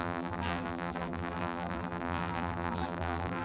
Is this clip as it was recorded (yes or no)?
no